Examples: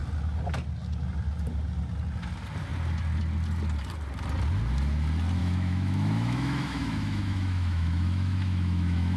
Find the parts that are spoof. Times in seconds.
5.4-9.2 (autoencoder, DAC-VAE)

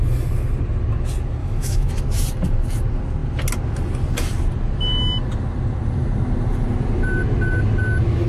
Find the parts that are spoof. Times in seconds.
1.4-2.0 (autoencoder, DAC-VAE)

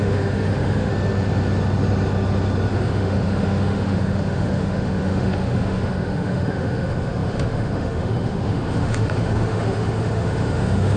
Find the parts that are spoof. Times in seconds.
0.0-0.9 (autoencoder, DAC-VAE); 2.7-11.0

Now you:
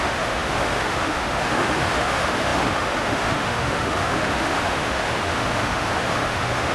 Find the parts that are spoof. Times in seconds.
0.0-6.7 (autoencoder, DAC-VAE)

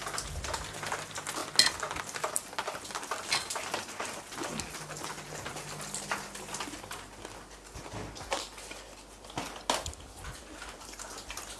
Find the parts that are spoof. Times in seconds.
none

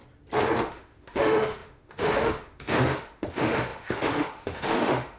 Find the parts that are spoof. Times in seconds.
0.6-5.2 (autoencoder, DAC-VAE)

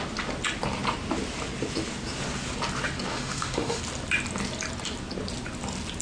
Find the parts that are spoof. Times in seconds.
3.1-3.8 (autoencoder, DAC-VAE)

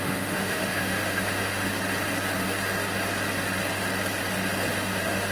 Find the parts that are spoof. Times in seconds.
0.0-1.7 (autoencoder, DAC-VAE); 4.7-5.3